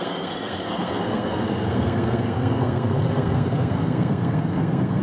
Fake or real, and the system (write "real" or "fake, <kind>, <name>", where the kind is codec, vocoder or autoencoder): fake, codec, SNAC